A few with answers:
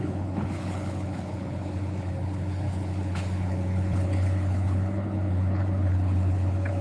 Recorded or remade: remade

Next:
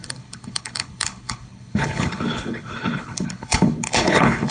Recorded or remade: remade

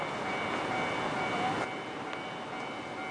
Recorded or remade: recorded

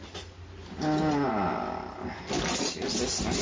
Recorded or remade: recorded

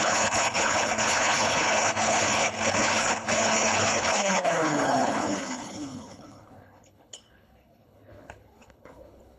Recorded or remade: remade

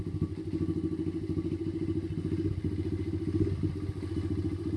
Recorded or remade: recorded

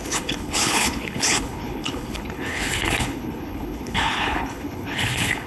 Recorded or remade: remade